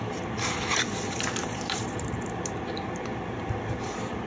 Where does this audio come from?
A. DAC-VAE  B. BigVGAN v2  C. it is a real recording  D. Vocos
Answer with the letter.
B